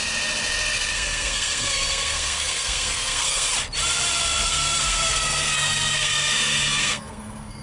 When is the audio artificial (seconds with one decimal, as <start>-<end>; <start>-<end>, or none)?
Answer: 0.9-3.5; 4.4-7.6